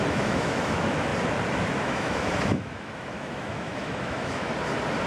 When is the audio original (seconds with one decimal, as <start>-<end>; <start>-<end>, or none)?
1.1-1.8; 4.5-5.1